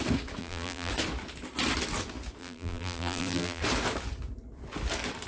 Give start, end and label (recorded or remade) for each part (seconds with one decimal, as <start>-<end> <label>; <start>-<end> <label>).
0.0-0.4 recorded; 0.4-0.9 remade; 0.9-2.4 recorded; 2.4-3.6 remade; 3.6-5.3 recorded